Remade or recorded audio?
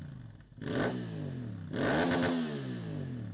recorded